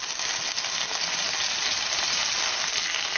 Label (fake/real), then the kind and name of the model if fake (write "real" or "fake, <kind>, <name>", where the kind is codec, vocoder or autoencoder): real